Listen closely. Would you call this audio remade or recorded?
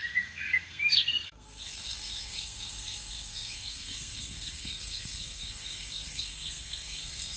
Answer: remade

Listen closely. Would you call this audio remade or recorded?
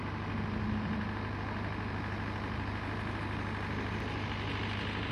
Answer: recorded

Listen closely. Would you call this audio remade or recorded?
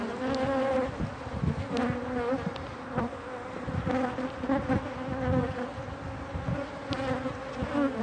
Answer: recorded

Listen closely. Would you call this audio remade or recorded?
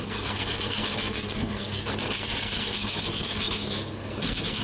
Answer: remade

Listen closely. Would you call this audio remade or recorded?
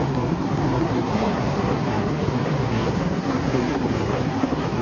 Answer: remade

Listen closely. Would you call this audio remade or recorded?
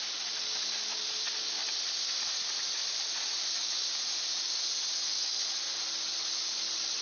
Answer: recorded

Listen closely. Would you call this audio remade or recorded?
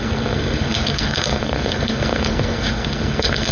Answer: remade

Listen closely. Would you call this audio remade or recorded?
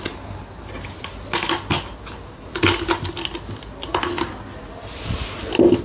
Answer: recorded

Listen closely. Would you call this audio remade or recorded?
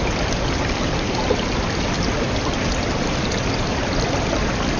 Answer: recorded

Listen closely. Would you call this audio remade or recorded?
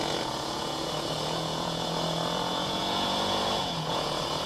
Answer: remade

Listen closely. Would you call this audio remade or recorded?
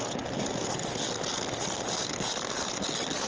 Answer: recorded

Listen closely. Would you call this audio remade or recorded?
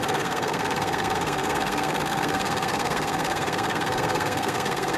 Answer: remade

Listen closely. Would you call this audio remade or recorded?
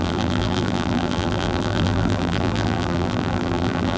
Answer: remade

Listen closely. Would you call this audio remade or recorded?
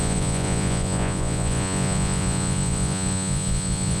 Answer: remade